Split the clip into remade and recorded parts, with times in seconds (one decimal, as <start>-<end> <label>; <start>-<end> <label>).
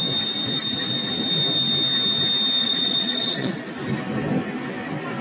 0.0-2.6 recorded; 2.6-3.6 remade; 3.6-5.2 recorded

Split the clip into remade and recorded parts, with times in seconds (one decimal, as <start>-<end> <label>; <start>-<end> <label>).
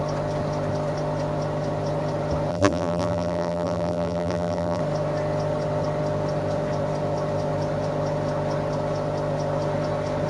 0.0-2.5 recorded; 2.5-4.8 remade; 4.8-10.3 recorded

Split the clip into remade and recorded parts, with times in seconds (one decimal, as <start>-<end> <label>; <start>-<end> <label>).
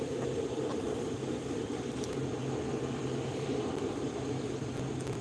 0.0-2.7 recorded; 2.7-4.4 remade; 4.4-5.2 recorded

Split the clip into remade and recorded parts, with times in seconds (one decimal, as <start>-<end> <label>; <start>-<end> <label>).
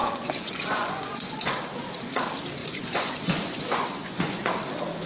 0.0-1.6 remade; 1.6-2.6 recorded; 2.6-4.4 remade; 4.4-5.1 recorded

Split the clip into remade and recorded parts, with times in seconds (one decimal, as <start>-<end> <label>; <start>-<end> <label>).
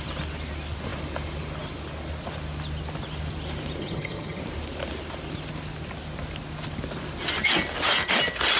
0.0-3.8 recorded; 3.8-4.4 remade; 4.4-8.6 recorded